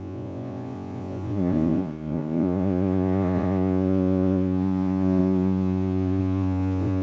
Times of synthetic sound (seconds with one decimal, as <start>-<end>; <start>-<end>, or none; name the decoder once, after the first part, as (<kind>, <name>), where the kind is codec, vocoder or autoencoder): 0.0-7.0 (vocoder, Vocos)